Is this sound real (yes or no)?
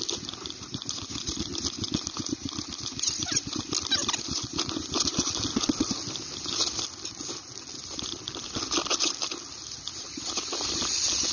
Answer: yes